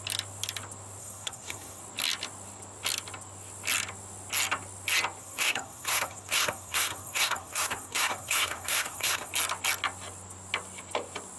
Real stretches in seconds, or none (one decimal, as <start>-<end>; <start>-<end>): 0.0-1.0; 1.8-5.2; 9.3-11.4